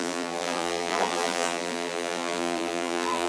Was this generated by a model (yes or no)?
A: yes